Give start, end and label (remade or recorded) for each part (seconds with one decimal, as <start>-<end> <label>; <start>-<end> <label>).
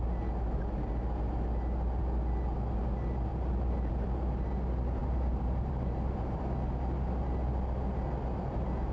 0.0-3.3 recorded; 3.3-3.9 remade; 3.9-5.0 recorded; 5.0-6.4 remade; 6.4-8.9 recorded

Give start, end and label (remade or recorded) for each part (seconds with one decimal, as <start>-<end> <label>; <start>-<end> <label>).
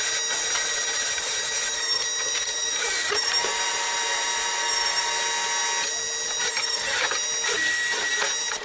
0.0-2.5 recorded; 2.5-4.6 remade; 4.6-8.6 recorded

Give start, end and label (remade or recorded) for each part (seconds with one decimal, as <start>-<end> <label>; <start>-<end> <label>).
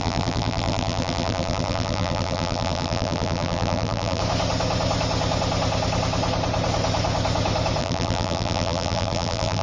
0.0-4.2 remade; 4.2-7.8 recorded; 7.8-9.6 remade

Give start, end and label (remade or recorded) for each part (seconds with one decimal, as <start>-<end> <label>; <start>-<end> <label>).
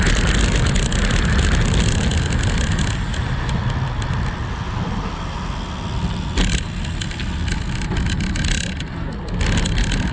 0.0-10.1 recorded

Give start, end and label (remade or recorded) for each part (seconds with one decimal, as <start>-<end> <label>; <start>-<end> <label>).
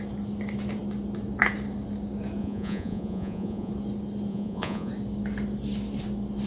0.0-2.4 recorded; 2.4-3.7 remade; 3.7-4.3 recorded; 4.3-4.9 remade; 4.9-6.5 recorded